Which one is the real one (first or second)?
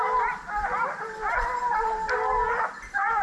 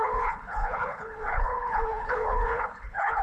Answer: first